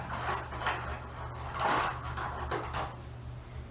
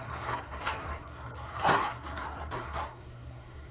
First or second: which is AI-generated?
second